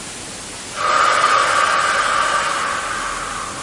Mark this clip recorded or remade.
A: recorded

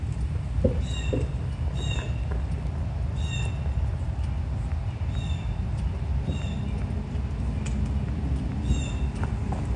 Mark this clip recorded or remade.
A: recorded